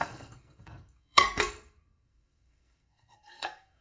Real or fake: fake